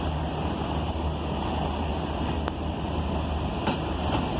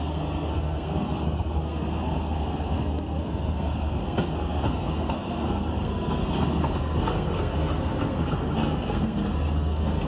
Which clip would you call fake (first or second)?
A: second